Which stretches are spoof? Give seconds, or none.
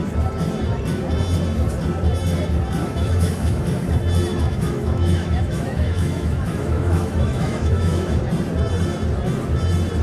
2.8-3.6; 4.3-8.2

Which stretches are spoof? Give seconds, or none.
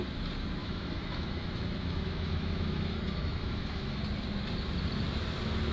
0.6-4.0